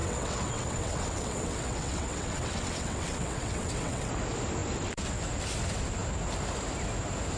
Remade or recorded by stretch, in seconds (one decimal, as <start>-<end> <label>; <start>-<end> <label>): 0.0-4.1 remade; 4.1-7.4 recorded